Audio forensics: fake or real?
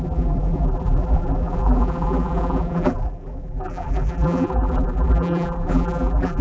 fake